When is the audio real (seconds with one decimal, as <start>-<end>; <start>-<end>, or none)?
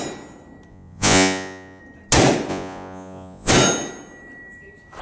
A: 0.0-0.7; 1.8-2.5; 3.5-5.0